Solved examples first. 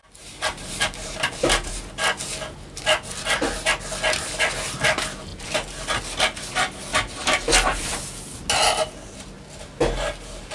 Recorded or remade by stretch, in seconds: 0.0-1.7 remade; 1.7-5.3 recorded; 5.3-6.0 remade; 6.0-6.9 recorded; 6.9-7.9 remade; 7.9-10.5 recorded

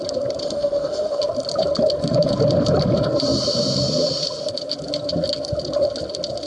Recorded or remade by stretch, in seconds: 0.0-0.4 recorded; 0.4-1.2 remade; 1.2-6.5 recorded

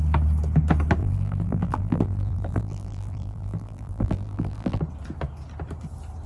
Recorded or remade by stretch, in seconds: 0.0-1.0 recorded; 1.0-4.8 remade; 4.8-6.3 recorded

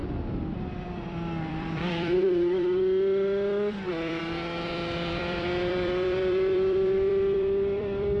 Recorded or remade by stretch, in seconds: 0.0-0.5 recorded; 0.5-4.2 remade; 4.2-4.7 recorded; 4.7-8.2 remade

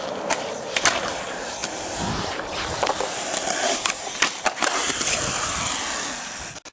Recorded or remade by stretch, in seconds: 0.0-6.7 recorded

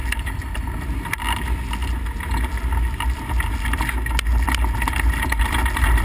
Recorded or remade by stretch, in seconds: 0.0-1.2 remade; 1.2-6.0 recorded

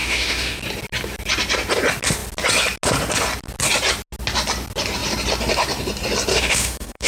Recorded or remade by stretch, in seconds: 0.0-0.6 remade; 0.6-6.3 recorded; 6.3-7.1 remade